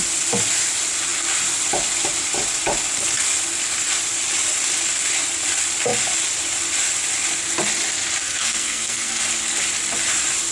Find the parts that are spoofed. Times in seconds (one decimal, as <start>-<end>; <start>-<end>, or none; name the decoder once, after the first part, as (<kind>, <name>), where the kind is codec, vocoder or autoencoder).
8.2-9.2 (codec, SNAC)